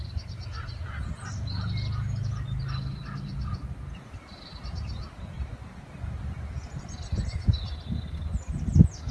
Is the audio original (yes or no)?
yes